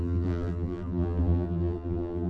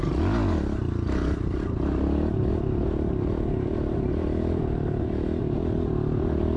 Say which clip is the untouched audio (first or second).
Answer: second